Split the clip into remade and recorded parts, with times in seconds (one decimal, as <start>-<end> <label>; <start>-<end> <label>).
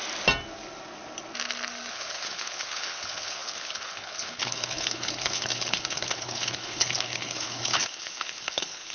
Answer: 0.0-1.9 recorded; 1.9-8.9 remade